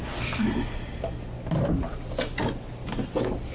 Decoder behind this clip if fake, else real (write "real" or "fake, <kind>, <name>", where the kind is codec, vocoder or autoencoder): real